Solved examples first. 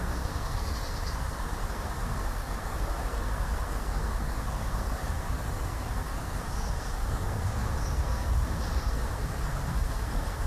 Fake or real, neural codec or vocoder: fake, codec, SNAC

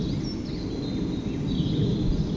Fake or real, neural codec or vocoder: real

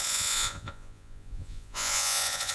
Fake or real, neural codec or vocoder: fake, vocoder, Vocos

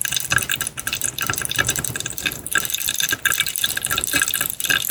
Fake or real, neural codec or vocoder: real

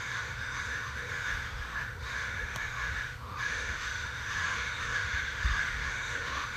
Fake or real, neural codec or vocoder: fake, autoencoder, DAC-VAE